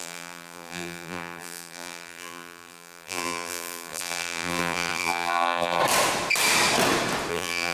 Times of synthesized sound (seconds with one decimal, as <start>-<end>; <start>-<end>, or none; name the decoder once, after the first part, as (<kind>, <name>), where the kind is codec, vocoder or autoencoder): 0.0-5.8 (vocoder, BigVGAN v2); 7.3-7.7